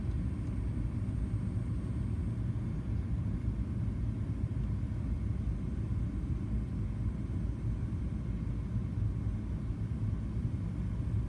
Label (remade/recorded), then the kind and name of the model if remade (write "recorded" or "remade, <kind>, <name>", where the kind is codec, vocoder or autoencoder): recorded